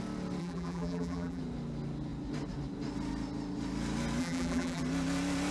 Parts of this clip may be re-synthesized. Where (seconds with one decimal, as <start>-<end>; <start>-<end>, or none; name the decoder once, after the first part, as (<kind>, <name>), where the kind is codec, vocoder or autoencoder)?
0.4-1.4 (vocoder, BigVGAN v2); 4.2-4.8